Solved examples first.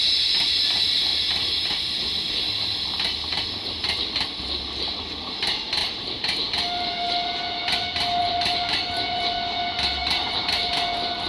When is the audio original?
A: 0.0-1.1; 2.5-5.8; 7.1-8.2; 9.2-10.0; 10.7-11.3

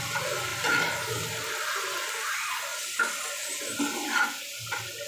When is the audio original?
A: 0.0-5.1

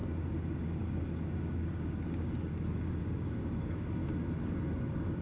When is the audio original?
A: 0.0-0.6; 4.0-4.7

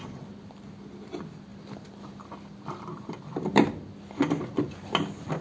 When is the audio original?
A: 0.0-5.4

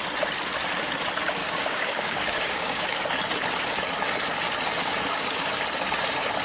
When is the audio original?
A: 0.0-1.4; 3.0-4.8; 5.5-6.4